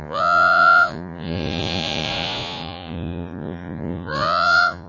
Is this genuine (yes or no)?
no